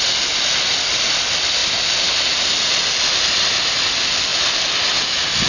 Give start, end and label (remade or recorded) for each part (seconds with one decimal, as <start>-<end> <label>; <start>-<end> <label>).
0.0-1.6 recorded; 1.6-3.2 remade; 3.2-5.5 recorded